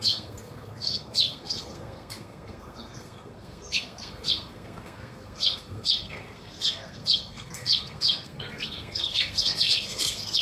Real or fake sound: fake